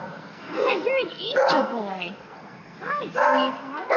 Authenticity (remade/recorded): remade